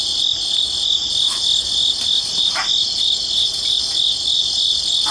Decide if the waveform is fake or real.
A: real